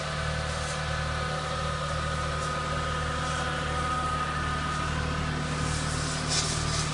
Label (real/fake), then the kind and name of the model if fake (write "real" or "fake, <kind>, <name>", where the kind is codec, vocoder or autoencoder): real